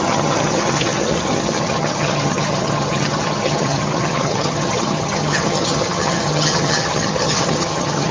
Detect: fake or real fake